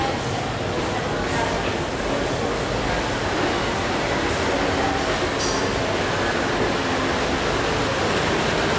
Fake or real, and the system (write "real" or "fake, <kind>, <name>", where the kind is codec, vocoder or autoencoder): real